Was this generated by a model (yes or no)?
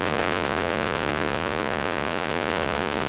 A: yes